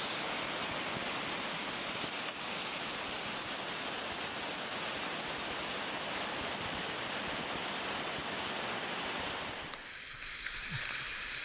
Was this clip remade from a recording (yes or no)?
no